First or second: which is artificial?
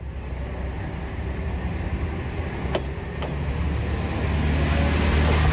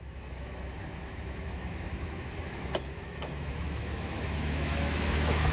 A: second